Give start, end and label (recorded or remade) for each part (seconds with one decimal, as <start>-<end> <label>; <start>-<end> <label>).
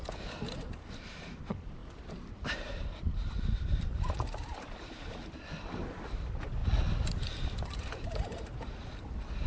0.0-6.6 remade; 6.6-7.1 recorded; 7.1-9.5 remade